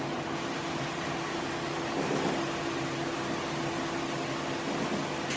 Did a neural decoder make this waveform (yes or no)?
no